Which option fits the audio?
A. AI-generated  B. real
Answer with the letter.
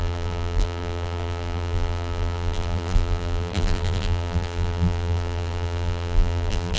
A